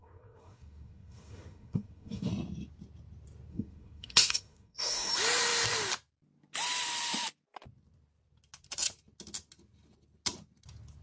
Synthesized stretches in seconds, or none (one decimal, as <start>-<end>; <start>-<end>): 0.0-2.3; 3.5-5.1